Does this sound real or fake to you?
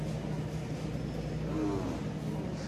real